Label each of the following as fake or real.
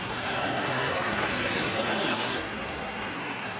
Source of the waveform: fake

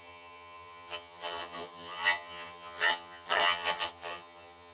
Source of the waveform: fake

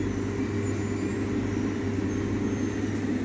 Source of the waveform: real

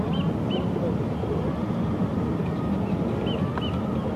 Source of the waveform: real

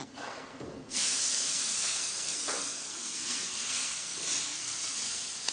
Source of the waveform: fake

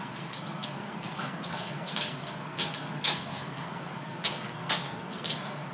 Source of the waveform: fake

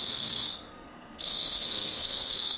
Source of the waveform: fake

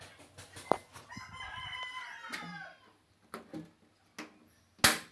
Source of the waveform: real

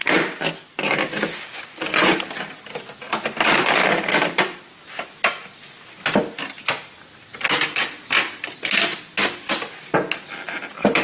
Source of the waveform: real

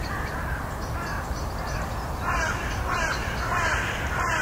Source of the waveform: real